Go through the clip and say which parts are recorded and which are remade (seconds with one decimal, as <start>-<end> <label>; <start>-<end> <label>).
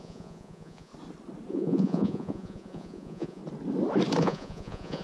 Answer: 0.0-0.9 remade; 0.9-1.5 recorded; 1.5-3.4 remade; 3.4-4.2 recorded; 4.2-5.0 remade